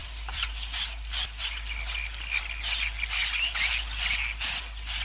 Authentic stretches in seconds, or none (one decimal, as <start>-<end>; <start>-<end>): 2.4-3.2; 3.7-5.0